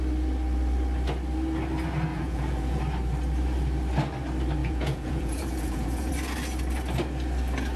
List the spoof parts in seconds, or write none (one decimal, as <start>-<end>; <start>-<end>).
2.1-2.8; 4.6-6.1